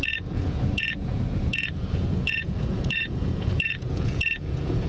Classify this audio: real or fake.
fake